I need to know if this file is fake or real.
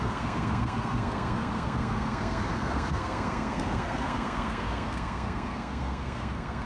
fake